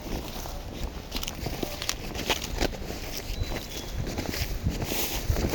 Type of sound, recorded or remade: recorded